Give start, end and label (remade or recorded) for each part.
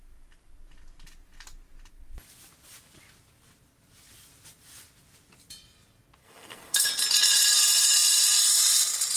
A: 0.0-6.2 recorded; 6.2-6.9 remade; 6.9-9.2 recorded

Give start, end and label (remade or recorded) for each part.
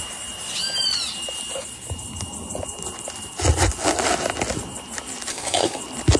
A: 0.0-5.3 recorded; 5.3-5.8 remade; 5.8-6.2 recorded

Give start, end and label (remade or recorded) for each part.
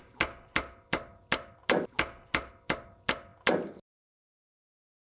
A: 0.0-5.1 recorded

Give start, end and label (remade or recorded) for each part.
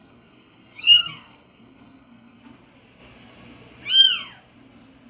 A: 0.0-2.4 remade; 2.4-5.1 recorded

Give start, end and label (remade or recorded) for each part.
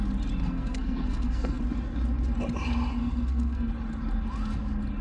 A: 0.0-0.4 recorded; 0.4-1.6 remade; 1.6-3.0 recorded; 3.0-3.7 remade; 3.7-5.0 recorded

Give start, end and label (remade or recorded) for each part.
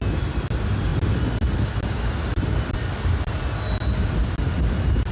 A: 0.0-5.1 recorded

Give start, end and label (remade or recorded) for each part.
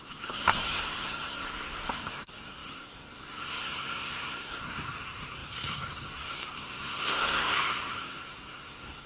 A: 0.0-9.1 remade